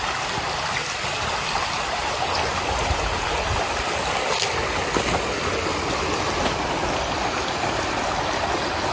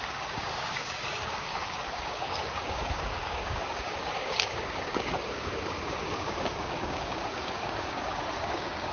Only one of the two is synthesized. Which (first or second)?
second